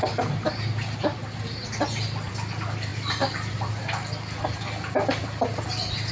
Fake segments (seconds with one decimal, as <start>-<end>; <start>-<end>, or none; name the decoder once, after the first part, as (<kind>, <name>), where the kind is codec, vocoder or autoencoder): none

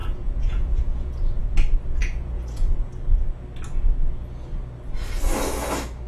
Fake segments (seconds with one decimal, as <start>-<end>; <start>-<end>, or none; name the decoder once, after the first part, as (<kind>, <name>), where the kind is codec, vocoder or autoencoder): 0.0-1.4 (vocoder, Vocos); 2.0-2.9

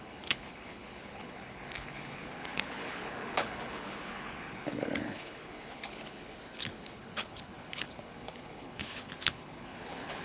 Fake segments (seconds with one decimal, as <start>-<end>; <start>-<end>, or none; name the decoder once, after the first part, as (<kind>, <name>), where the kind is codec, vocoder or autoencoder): 0.0-10.2 (codec, HILCodec)

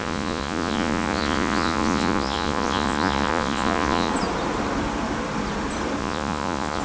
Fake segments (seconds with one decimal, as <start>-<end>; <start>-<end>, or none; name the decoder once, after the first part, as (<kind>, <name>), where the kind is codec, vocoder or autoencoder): 0.0-4.1 (vocoder, Vocos); 6.0-6.8